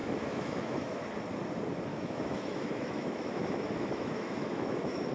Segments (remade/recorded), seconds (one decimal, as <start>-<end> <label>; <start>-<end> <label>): 0.0-1.0 remade; 1.0-1.9 recorded; 1.9-5.1 remade